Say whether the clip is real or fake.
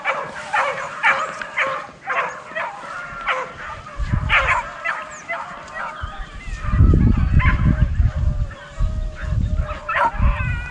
real